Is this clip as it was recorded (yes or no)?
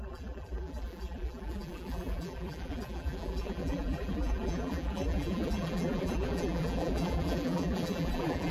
no